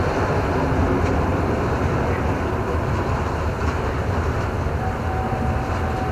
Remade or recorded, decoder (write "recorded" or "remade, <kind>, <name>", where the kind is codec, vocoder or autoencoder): recorded